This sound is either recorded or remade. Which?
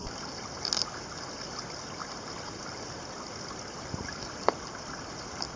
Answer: remade